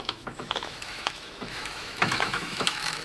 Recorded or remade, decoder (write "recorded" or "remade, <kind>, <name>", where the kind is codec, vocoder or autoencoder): remade, autoencoder, DAC-VAE